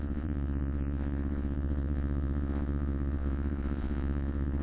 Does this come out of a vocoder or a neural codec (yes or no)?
yes